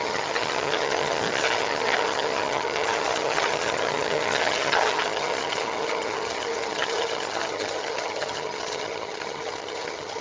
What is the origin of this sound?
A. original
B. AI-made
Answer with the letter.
B